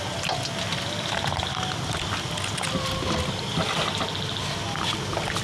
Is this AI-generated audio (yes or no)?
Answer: no